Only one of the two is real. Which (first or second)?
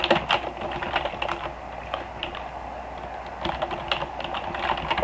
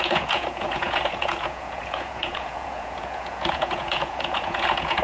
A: first